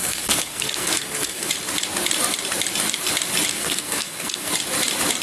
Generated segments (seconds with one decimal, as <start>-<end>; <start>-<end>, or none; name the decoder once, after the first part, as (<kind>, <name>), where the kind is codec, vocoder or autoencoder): 0.0-1.5 (codec, SNAC); 3.5-4.5